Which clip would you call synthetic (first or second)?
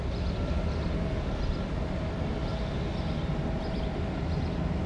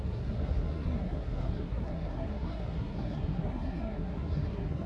second